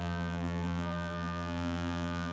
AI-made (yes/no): yes